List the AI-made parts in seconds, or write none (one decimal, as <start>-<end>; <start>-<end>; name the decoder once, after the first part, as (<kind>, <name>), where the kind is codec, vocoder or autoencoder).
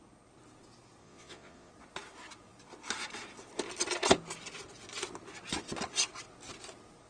1.0-1.7 (vocoder, Vocos)